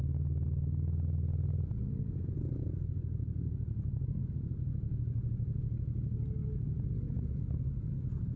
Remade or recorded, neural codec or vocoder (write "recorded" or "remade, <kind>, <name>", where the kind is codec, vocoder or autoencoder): recorded